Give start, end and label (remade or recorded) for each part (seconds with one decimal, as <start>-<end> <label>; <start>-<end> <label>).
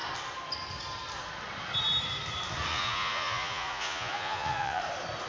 0.0-2.7 recorded; 2.7-4.8 remade; 4.8-5.3 recorded